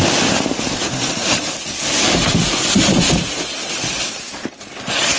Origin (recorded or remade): recorded